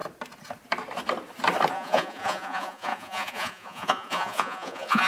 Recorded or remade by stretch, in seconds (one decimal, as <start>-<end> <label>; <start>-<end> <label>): 0.0-1.7 recorded; 1.7-5.1 remade

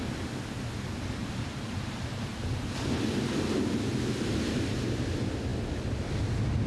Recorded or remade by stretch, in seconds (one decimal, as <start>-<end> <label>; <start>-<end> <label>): 0.0-6.7 recorded